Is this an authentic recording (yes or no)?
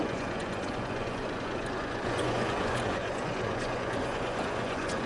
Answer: no